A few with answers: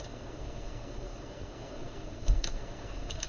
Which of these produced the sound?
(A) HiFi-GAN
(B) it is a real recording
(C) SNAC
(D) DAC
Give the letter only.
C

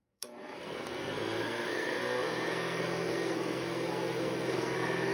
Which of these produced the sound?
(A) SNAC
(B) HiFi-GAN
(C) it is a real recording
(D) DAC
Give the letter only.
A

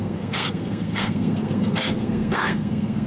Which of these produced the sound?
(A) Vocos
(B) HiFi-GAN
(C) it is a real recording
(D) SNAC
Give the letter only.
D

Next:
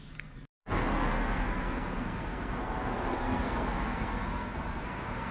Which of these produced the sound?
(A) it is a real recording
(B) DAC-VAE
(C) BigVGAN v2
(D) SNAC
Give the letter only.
D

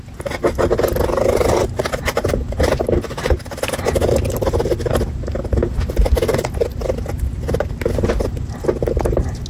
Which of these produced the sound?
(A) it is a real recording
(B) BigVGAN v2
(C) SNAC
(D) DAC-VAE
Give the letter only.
A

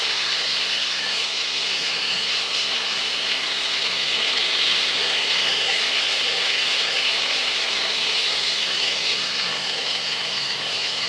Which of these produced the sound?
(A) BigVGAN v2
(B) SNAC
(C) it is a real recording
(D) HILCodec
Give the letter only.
B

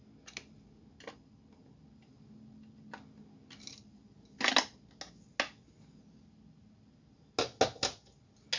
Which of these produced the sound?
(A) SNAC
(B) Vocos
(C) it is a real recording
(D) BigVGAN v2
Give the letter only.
C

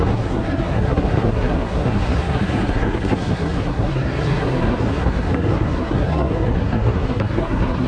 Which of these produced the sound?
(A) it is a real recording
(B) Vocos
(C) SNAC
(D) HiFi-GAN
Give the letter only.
C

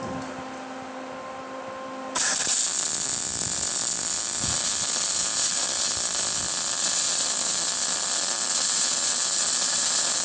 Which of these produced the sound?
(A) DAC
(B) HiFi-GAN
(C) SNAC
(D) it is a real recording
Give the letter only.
D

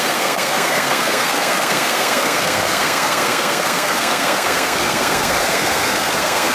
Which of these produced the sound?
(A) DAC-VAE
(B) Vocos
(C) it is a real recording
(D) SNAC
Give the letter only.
D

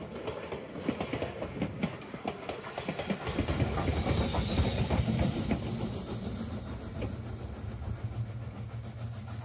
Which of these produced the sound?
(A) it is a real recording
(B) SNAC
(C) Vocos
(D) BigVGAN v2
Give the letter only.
A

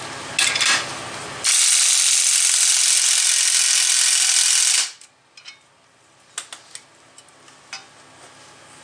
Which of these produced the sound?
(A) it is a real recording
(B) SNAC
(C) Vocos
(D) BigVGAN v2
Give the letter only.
A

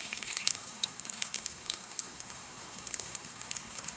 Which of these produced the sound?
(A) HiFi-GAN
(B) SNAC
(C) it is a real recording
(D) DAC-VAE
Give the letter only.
B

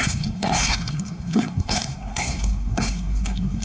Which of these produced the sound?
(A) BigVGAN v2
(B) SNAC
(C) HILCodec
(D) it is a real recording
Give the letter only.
B